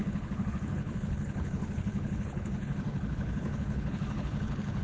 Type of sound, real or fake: fake